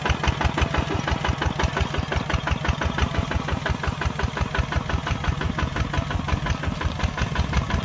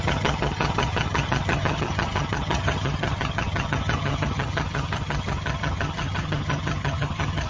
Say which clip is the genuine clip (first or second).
first